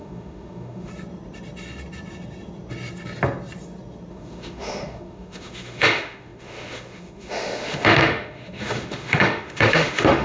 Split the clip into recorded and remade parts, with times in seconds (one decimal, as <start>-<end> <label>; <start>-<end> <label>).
0.0-0.9 remade; 0.9-4.1 recorded; 4.1-10.2 remade